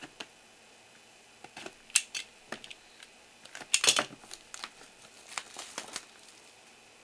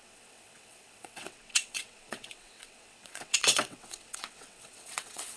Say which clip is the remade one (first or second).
second